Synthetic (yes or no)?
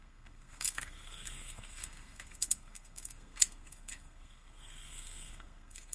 yes